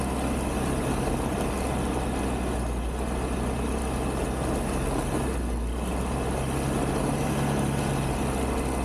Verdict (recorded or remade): recorded